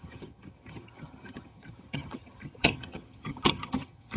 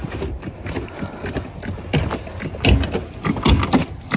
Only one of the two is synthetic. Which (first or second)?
first